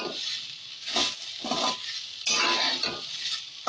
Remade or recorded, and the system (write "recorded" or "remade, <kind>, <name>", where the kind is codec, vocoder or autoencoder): recorded